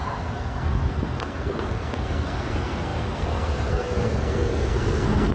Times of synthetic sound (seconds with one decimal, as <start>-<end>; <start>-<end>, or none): 0.0-5.3